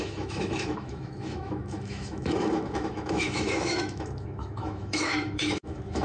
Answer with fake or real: fake